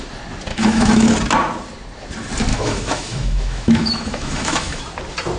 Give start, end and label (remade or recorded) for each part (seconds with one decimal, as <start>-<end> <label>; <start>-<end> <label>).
0.0-0.5 recorded; 0.5-1.1 remade; 1.1-2.5 recorded; 2.5-4.8 remade; 4.8-5.4 recorded